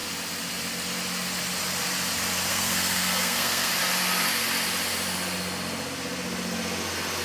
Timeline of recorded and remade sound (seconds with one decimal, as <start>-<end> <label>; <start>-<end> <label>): 0.0-2.5 recorded; 2.5-3.7 remade; 3.7-7.2 recorded